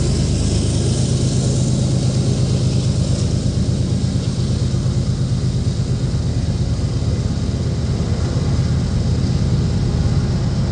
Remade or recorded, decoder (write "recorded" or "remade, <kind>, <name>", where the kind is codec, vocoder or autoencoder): recorded